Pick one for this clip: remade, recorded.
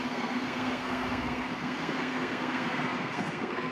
remade